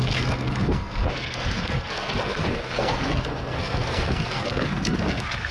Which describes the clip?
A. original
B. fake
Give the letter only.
B